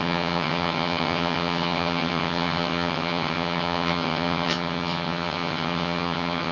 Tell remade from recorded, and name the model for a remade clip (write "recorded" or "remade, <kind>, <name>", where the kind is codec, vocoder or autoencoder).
remade, vocoder, HiFi-GAN